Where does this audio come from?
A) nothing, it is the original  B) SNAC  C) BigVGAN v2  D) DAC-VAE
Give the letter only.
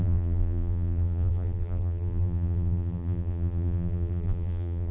C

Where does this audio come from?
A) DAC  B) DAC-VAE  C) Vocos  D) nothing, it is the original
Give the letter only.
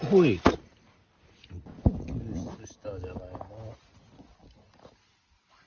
D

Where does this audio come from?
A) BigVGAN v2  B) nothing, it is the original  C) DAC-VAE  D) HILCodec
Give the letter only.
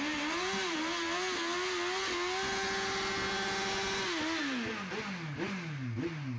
B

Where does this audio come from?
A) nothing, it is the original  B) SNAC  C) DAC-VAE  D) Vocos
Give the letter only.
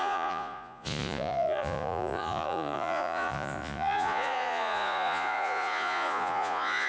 D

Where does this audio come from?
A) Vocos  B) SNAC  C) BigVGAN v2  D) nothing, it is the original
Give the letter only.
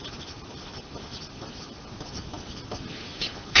D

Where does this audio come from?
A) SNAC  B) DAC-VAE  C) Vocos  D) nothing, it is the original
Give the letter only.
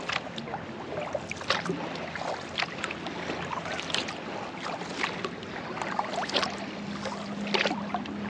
D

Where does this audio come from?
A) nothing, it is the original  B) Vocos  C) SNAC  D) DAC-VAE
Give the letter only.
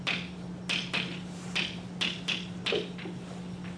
A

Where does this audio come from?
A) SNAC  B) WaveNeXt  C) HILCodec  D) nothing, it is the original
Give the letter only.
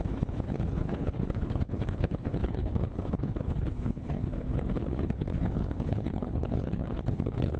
C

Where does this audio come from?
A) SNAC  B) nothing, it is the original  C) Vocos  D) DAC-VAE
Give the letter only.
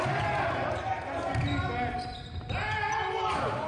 B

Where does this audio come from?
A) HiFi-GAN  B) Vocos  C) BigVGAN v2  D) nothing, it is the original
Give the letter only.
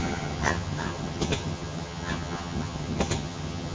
A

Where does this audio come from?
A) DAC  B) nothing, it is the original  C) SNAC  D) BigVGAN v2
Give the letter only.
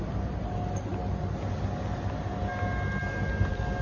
B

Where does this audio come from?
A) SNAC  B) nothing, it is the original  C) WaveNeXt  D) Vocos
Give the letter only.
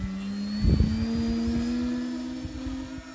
B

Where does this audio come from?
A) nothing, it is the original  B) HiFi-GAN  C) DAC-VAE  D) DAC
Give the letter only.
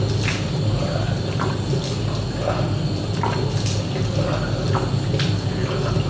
A